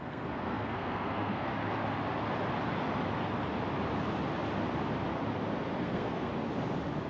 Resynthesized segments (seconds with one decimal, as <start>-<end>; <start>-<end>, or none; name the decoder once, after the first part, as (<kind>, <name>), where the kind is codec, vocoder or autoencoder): 0.0-1.5 (codec, SNAC); 5.8-6.3